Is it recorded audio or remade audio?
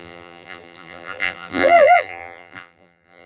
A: remade